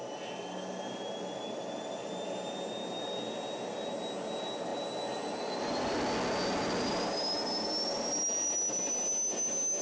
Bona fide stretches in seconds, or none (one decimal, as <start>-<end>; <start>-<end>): 0.0-9.8